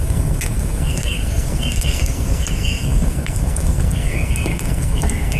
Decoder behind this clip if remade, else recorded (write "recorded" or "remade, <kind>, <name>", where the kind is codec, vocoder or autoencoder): remade, codec, SNAC